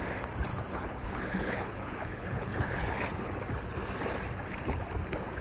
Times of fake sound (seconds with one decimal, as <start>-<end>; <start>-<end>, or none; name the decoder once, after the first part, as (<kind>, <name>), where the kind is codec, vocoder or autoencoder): 0.5-3.3 (codec, HILCodec)